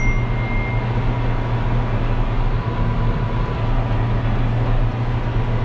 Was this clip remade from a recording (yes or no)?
no